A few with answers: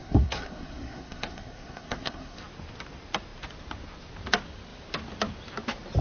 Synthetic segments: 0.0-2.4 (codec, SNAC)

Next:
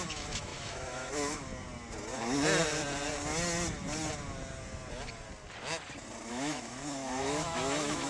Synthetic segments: 0.0-1.5 (autoencoder, DAC-VAE); 6.3-8.1